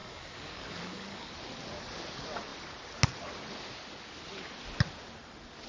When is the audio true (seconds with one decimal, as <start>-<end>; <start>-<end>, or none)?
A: 1.3-5.7